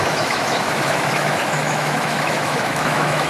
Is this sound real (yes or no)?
no